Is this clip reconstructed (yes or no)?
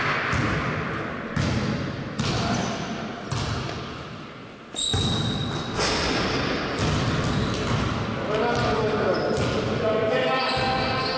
no